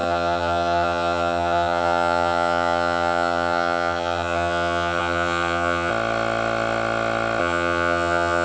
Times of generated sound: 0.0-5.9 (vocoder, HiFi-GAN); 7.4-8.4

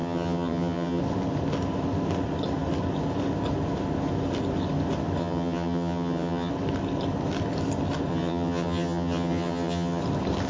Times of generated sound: 0.0-1.0 (vocoder, HiFi-GAN); 5.2-6.5; 8.1-10.0

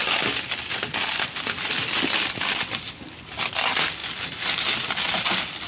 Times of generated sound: none

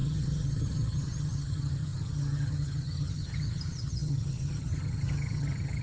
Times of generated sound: 0.0-5.8 (vocoder, HiFi-GAN)

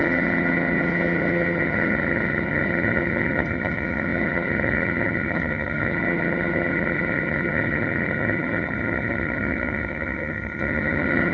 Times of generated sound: 0.0-11.3 (vocoder, HiFi-GAN)

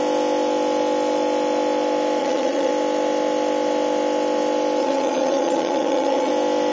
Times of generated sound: 2.2-2.7 (vocoder, HiFi-GAN); 4.8-6.3

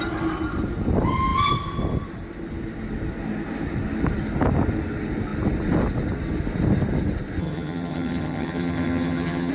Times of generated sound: 7.4-9.5 (vocoder, HiFi-GAN)